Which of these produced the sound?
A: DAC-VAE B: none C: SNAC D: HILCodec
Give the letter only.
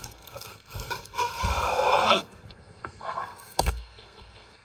C